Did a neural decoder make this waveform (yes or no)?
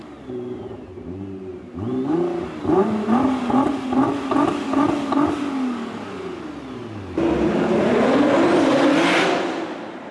no